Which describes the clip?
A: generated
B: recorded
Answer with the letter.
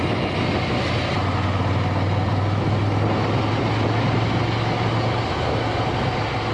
B